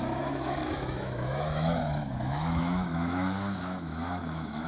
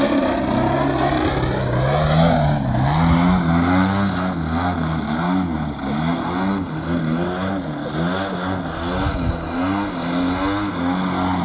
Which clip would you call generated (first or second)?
first